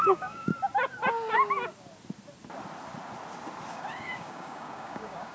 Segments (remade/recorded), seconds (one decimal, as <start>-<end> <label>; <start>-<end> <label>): 0.0-0.5 remade; 0.5-3.7 recorded; 3.7-5.3 remade